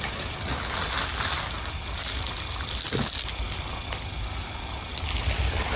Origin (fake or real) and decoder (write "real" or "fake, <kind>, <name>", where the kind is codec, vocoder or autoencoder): real